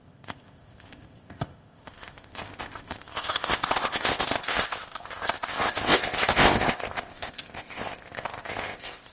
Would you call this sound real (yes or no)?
no